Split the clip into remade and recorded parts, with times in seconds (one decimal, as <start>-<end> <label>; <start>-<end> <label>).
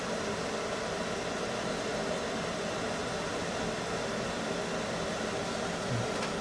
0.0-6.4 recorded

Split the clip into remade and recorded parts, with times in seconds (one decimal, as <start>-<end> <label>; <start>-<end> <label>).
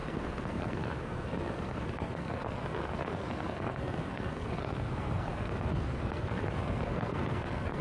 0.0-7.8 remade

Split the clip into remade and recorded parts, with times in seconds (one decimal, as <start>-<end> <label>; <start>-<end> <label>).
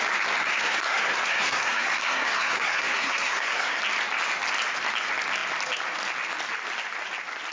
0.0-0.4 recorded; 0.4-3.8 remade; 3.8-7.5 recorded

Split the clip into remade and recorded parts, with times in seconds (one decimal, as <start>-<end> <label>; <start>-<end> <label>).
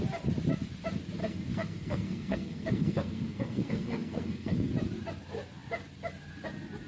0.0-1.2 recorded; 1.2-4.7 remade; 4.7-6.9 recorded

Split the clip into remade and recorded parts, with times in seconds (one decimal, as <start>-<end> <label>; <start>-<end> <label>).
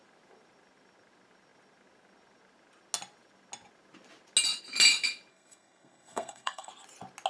0.0-5.3 recorded; 5.3-6.7 remade; 6.7-7.3 recorded